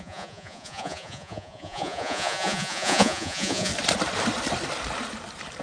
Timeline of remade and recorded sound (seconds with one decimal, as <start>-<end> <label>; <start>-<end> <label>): 0.0-3.7 remade; 3.7-5.6 recorded